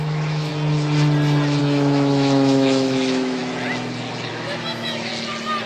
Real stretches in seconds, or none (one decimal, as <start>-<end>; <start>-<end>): 0.5-1.6; 3.4-4.3; 5.1-5.7